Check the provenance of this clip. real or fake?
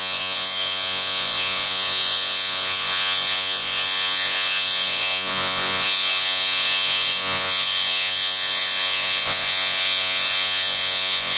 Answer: fake